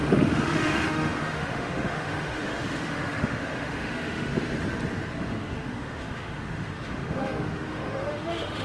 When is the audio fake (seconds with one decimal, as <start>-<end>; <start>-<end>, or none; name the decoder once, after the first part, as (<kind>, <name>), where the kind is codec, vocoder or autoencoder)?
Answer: 0.0-4.3 (autoencoder, DAC-VAE); 5.2-8.6